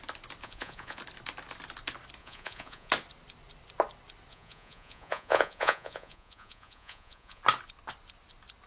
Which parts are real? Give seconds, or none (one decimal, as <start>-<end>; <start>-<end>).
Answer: 0.0-0.4; 1.0-2.2; 2.9-4.3; 7.4-8.7